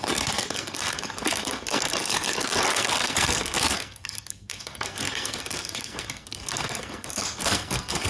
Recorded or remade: remade